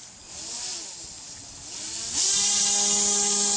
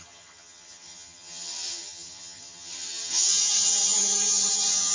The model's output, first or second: second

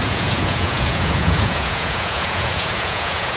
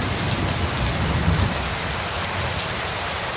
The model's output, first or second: first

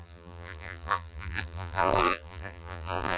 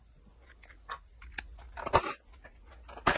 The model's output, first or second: first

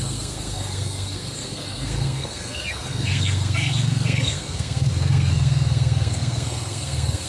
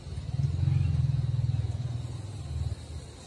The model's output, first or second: first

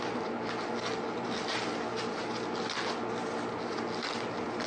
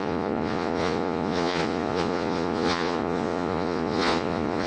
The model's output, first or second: second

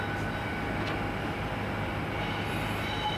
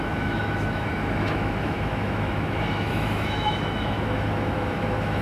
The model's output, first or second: second